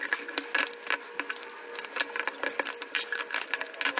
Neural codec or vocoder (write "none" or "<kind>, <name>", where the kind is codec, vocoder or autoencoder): none